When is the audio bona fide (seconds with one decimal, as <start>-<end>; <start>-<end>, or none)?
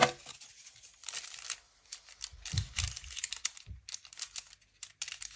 0.0-5.4